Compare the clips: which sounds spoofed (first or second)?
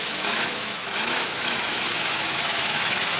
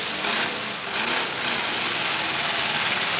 first